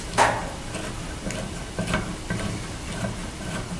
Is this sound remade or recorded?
recorded